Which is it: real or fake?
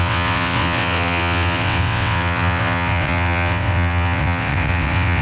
fake